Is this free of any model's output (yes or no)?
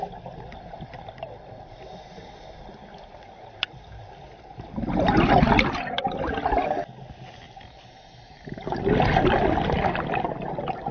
yes